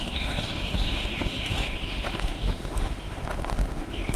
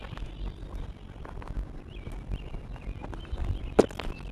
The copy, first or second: first